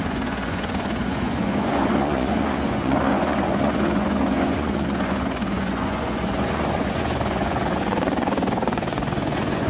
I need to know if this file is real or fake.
fake